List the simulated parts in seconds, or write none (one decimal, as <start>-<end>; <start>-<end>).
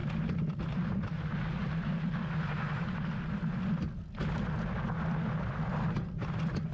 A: none